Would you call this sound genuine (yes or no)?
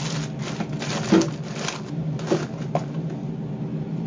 yes